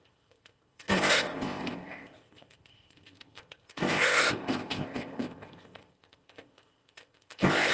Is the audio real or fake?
fake